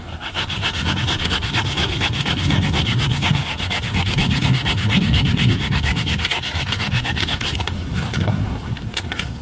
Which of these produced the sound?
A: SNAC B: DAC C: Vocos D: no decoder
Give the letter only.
A